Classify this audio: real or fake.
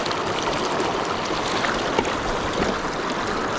real